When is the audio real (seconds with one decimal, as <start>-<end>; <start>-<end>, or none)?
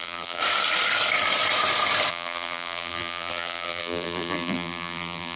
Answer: 0.4-2.1